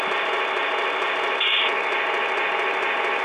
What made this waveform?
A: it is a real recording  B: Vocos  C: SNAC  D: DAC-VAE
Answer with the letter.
A